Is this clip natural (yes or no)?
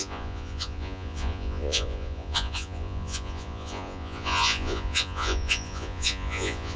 no